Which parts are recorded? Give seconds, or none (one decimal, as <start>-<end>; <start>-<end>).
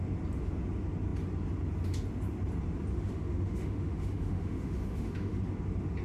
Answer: 0.0-2.9; 5.4-6.0